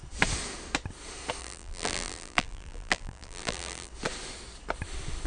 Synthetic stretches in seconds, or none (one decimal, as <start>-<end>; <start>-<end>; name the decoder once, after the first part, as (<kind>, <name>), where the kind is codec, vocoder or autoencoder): 1.4-3.9 (vocoder, BigVGAN v2)